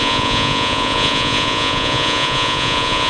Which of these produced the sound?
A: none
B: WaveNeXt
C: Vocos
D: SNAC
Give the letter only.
C